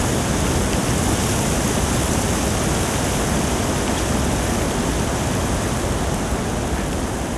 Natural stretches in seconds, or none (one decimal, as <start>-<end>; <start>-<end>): 0.0-7.4